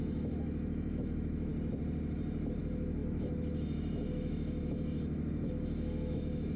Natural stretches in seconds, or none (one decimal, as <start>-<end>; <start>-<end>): 1.5-2.6